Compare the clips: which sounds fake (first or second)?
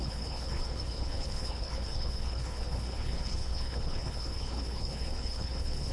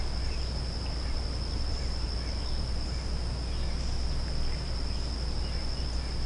first